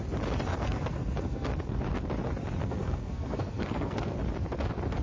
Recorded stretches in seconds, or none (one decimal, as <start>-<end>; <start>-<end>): 0.0-0.5; 1.8-2.6; 4.2-5.0